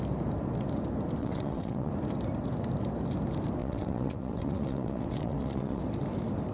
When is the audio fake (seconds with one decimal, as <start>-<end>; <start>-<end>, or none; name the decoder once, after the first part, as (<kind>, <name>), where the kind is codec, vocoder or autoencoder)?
1.2-1.9 (vocoder, WaveNeXt); 3.6-5.8